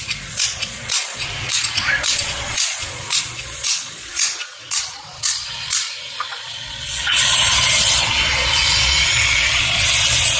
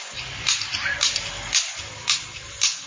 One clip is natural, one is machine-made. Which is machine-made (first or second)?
first